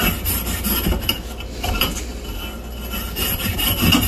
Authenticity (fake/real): real